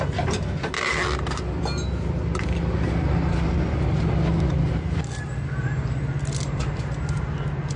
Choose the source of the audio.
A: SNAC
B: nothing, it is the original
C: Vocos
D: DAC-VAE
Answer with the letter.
B